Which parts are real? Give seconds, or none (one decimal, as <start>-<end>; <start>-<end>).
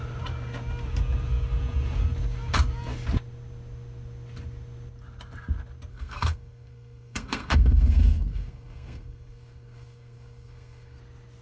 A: 0.0-5.9; 11.0-11.4